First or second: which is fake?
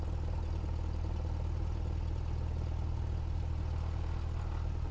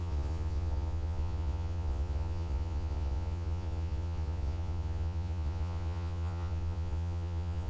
second